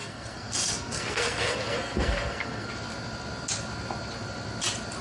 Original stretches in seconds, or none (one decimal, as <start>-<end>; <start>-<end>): 2.7-5.0